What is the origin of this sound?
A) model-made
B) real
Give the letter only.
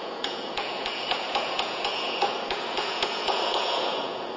A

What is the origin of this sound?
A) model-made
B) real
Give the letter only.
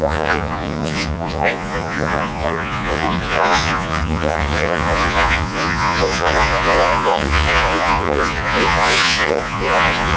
A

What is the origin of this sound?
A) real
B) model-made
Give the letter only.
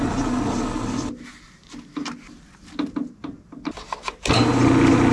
A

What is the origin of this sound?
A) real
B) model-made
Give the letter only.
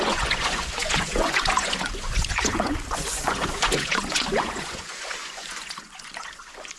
B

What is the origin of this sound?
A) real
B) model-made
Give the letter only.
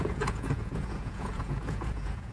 B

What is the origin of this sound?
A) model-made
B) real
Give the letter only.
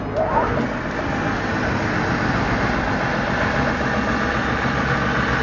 B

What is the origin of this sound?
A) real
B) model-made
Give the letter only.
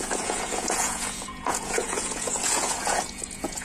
B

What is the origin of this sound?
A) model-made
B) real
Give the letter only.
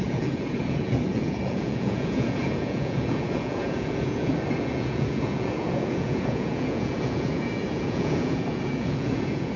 A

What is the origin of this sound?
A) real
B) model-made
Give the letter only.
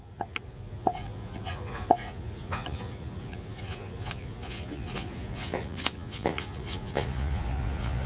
B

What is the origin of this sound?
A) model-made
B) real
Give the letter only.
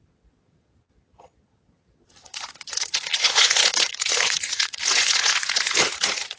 A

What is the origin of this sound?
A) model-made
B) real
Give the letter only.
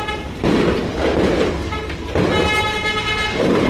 B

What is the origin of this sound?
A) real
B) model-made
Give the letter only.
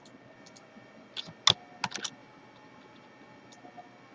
A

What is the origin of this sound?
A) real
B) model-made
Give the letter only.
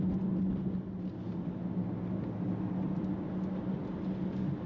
A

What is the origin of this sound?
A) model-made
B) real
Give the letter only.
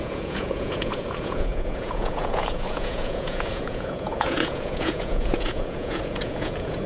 A